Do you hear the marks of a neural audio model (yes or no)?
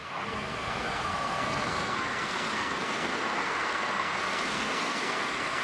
yes